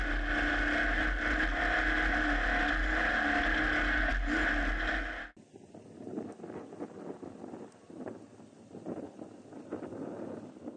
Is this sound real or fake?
real